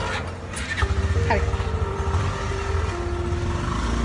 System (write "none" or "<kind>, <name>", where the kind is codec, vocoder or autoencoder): none